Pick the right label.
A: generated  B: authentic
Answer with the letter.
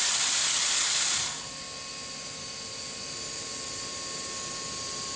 B